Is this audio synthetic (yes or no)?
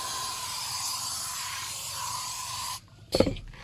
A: yes